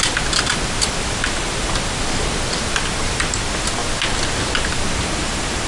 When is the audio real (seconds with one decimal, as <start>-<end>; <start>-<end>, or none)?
0.0-5.7